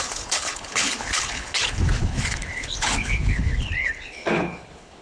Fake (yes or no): yes